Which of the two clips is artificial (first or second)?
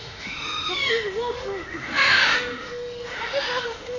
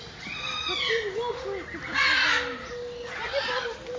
first